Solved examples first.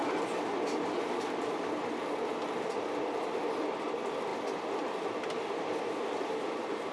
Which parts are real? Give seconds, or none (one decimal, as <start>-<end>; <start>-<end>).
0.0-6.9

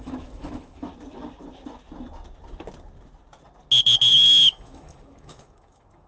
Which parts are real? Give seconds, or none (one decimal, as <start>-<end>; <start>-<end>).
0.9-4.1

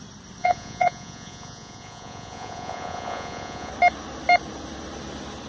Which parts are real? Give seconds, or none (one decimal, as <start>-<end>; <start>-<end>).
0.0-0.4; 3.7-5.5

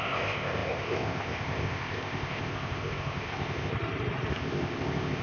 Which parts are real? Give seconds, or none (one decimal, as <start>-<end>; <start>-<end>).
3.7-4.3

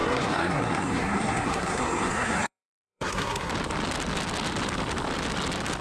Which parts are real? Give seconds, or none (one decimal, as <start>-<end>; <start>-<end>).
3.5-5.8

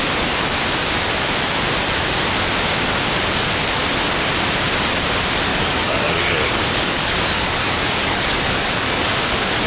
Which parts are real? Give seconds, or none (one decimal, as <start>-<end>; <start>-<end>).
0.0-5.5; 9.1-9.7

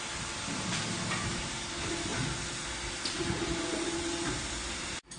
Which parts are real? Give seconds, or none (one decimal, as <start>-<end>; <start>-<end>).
0.0-5.2